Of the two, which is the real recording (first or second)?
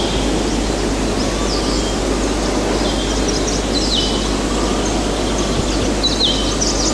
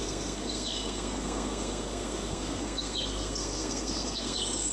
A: first